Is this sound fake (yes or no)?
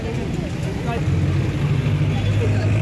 no